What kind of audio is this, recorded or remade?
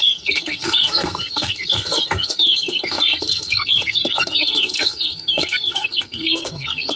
remade